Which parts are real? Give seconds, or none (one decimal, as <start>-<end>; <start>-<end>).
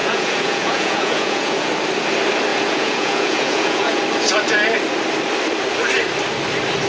1.7-2.5; 4.0-6.9